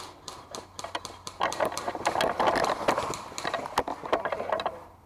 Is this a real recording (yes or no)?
yes